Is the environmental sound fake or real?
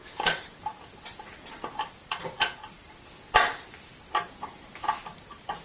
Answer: fake